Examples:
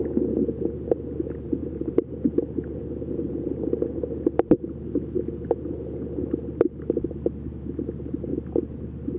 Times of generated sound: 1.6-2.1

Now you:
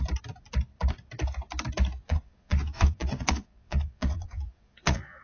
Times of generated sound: 2.0-5.2